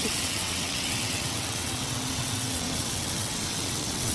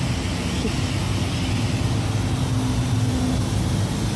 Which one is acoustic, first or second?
second